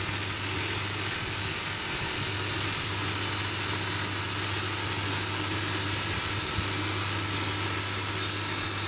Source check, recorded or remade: recorded